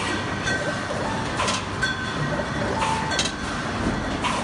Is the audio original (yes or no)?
yes